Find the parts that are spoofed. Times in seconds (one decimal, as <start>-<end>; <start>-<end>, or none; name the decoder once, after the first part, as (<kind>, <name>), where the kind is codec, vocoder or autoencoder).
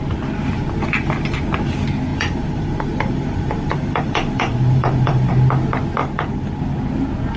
2.1-5.3 (vocoder, BigVGAN v2); 6.0-6.6